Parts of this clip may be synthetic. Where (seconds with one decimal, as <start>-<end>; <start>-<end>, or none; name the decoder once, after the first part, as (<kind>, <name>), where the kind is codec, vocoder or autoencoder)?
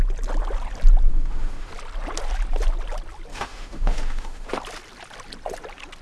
1.1-1.7 (autoencoder, DAC-VAE); 3.3-4.5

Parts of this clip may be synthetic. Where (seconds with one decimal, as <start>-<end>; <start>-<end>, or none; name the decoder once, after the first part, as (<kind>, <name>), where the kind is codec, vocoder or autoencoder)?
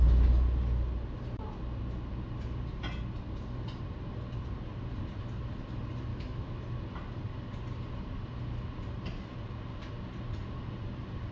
6.1-6.6 (autoencoder, DAC-VAE)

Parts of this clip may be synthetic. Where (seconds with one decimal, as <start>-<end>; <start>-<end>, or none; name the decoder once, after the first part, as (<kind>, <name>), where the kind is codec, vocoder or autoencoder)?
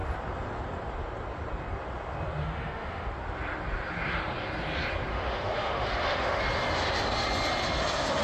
2.4-3.1 (autoencoder, DAC-VAE); 5.1-6.4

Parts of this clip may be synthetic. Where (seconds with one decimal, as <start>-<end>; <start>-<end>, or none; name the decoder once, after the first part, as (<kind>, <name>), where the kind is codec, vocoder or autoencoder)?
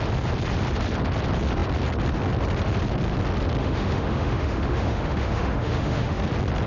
3.6-6.2 (autoencoder, DAC-VAE)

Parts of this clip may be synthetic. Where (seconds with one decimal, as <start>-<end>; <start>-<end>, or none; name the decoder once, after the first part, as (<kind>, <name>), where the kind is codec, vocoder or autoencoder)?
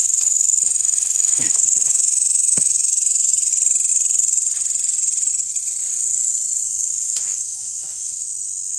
0.0-3.5 (autoencoder, DAC-VAE); 6.6-8.3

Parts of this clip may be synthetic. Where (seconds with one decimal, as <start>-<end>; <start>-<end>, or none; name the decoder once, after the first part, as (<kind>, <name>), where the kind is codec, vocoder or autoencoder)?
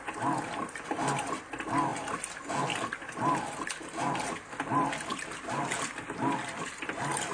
none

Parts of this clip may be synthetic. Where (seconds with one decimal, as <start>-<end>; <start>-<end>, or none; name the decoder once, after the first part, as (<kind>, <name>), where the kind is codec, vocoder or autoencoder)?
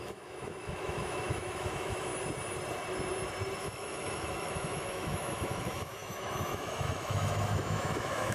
0.0-2.1 (autoencoder, DAC-VAE); 3.6-8.3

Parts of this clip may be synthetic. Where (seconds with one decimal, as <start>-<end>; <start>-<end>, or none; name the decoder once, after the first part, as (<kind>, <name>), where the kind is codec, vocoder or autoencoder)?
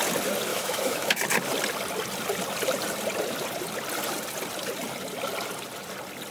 0.5-1.2 (autoencoder, DAC-VAE)